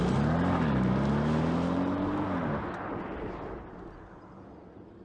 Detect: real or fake real